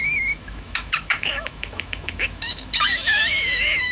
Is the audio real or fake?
fake